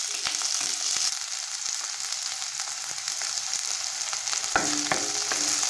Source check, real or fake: real